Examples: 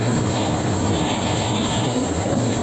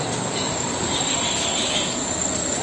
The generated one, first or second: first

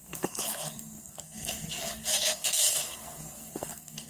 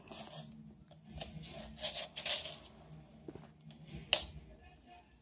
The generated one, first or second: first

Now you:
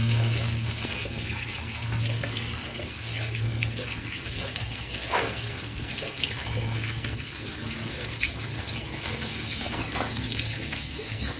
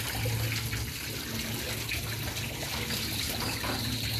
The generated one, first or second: first